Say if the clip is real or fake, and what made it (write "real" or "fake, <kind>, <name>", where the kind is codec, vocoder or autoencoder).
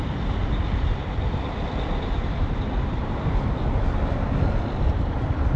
real